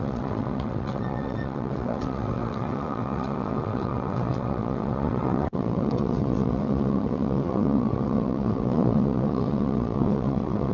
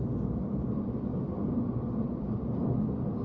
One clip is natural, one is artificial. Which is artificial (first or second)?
first